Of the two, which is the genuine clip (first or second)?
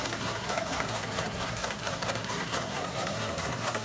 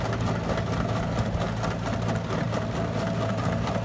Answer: second